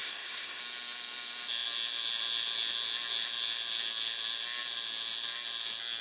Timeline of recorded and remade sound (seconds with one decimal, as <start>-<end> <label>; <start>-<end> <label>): 0.0-0.6 remade; 0.6-6.0 recorded